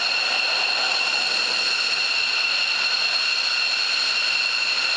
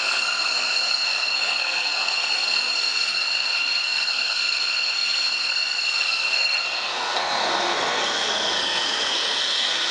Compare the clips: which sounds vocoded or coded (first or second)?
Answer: second